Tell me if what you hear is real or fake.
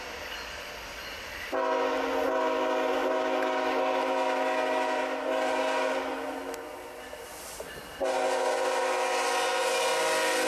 real